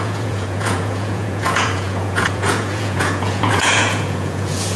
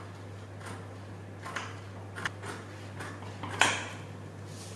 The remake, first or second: first